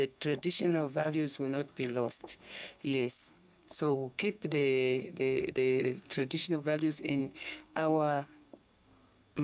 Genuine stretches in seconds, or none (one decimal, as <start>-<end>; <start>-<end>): none